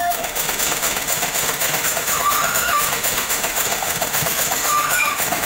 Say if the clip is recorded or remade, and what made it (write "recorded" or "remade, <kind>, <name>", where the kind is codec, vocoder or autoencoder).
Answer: remade, autoencoder, DAC-VAE